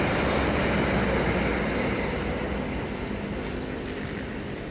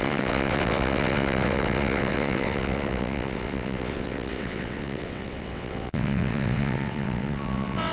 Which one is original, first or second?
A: first